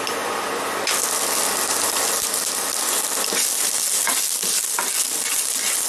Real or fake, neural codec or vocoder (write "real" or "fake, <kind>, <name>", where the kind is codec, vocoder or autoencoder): real